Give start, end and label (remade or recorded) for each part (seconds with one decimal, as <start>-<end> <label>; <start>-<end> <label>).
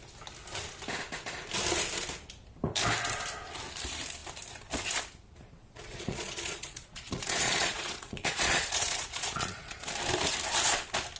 0.0-5.6 recorded; 5.6-9.9 remade; 9.9-11.2 recorded